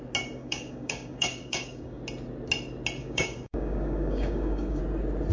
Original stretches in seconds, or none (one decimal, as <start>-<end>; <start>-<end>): 0.0-0.4; 2.0-3.0; 4.8-5.3